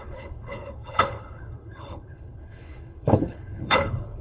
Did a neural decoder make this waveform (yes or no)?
yes